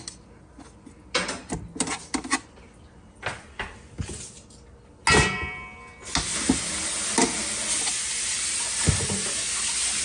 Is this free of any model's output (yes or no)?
yes